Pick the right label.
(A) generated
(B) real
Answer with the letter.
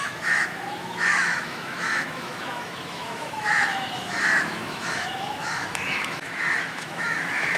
A